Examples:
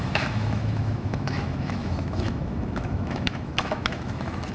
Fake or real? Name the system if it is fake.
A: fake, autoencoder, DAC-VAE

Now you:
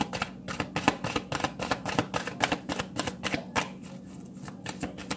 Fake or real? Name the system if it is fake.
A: real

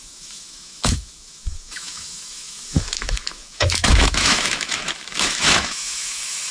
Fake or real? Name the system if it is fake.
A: fake, autoencoder, DAC-VAE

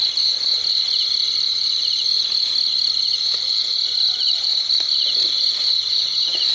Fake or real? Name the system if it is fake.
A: real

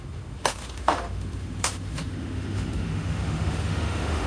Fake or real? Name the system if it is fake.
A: fake, autoencoder, DAC-VAE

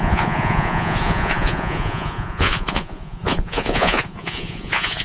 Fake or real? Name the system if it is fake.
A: fake, vocoder, Vocos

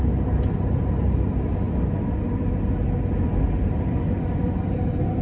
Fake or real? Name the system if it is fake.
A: real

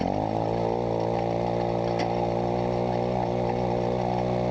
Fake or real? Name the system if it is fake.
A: real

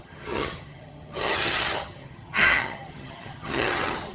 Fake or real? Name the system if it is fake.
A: fake, vocoder, HiFi-GAN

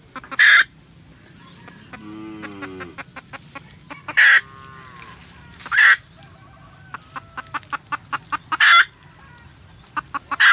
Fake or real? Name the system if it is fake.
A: real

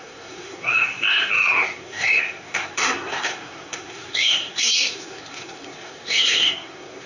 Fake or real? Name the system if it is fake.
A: fake, codec, SNAC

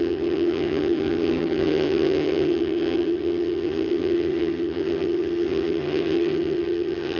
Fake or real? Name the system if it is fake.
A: fake, vocoder, HiFi-GAN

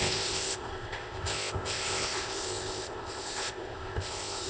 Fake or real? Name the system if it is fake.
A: fake, codec, ZipCodec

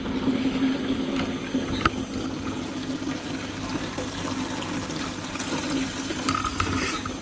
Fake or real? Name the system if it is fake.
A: real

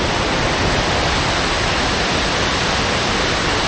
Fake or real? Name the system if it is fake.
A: real